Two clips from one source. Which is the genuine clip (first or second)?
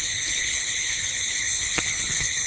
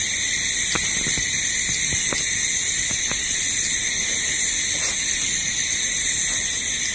second